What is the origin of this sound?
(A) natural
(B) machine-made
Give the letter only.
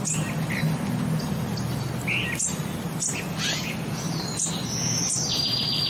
A